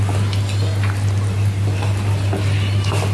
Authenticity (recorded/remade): recorded